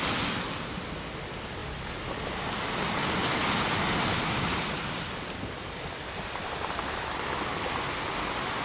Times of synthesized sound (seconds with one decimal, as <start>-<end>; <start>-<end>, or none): 1.6-2.5; 3.2-7.5